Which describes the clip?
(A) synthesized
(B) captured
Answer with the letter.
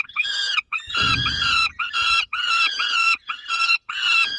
A